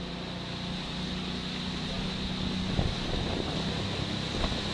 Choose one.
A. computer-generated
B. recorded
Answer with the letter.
B